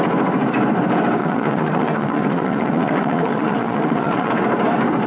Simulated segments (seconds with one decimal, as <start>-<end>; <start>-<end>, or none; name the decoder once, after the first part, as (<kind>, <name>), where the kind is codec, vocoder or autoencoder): 1.2-4.3 (vocoder, Vocos)